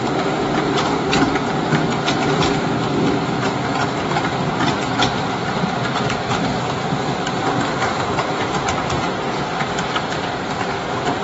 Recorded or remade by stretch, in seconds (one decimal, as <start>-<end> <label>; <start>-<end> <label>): 0.0-5.1 recorded; 5.1-7.3 remade; 7.3-7.9 recorded; 7.9-9.5 remade; 9.5-11.2 recorded